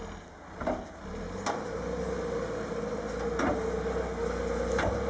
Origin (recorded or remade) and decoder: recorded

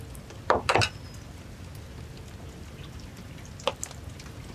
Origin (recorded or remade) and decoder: recorded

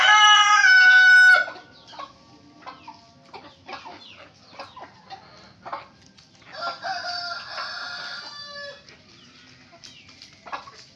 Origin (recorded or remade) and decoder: recorded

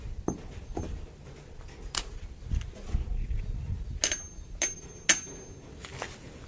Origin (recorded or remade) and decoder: recorded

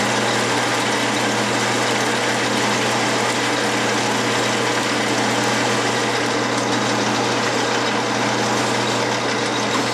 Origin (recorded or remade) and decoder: recorded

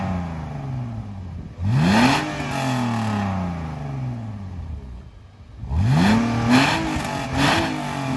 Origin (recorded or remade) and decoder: recorded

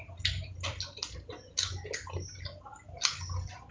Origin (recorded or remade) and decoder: recorded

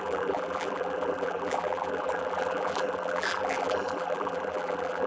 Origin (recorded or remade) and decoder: remade, vocoder, BigVGAN v2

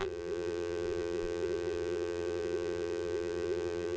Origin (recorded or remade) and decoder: remade, vocoder, BigVGAN v2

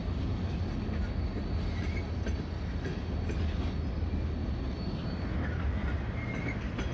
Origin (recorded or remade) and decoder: recorded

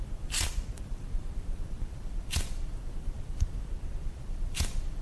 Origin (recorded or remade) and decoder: remade, vocoder, BigVGAN v2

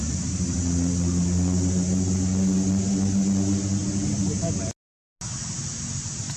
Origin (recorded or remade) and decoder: recorded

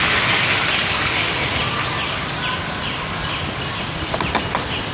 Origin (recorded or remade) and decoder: recorded